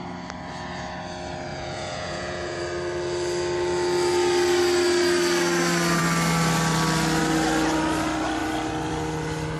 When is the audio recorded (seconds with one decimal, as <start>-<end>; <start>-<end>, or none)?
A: 0.0-1.5; 2.6-9.6